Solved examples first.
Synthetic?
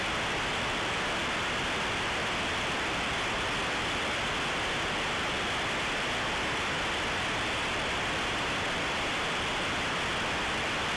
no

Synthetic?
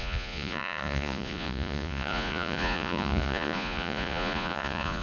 yes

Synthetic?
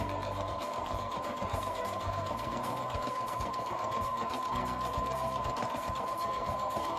yes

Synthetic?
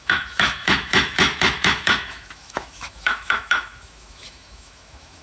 yes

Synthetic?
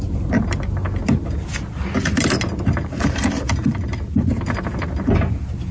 no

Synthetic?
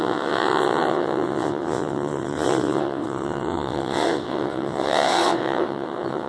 yes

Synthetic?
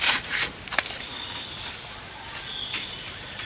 yes